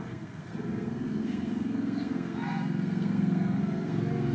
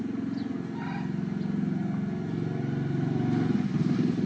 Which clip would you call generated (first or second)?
first